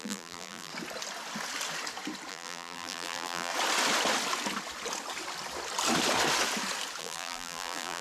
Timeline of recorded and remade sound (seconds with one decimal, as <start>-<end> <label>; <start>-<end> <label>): 0.0-0.7 remade; 0.7-2.3 recorded; 2.3-3.5 remade; 3.5-7.0 recorded; 7.0-8.0 remade